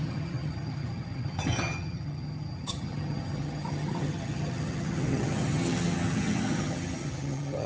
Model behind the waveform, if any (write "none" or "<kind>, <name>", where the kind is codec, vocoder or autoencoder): vocoder, HiFi-GAN